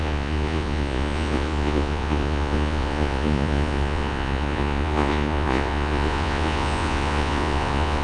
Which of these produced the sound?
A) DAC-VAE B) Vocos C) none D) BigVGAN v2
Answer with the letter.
B